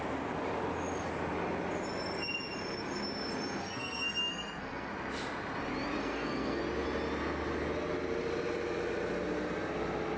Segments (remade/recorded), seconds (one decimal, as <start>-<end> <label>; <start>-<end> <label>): 0.0-3.6 recorded; 3.6-4.9 remade; 4.9-6.0 recorded; 6.0-6.6 remade; 6.6-10.2 recorded